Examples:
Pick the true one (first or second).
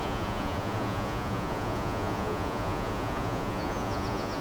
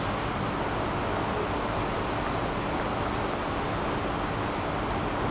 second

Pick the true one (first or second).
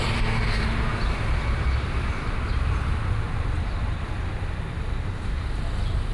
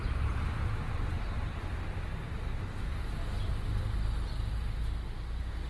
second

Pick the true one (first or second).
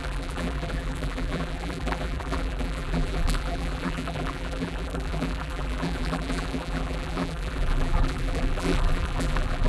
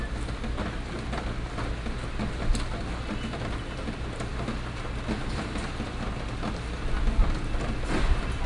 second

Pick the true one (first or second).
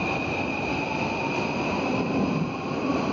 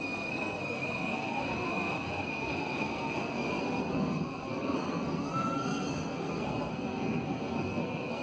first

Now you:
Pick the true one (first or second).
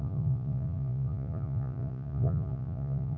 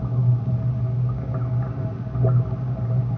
second